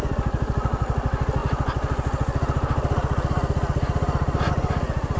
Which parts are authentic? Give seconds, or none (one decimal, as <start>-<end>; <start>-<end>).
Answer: 0.0-5.2